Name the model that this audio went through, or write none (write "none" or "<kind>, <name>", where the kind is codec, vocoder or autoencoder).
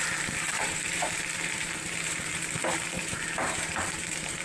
vocoder, BigVGAN v2